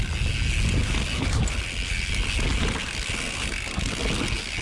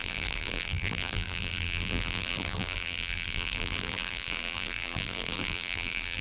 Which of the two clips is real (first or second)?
first